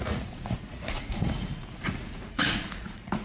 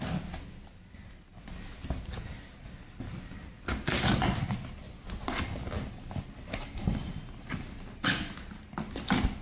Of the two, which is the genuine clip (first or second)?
second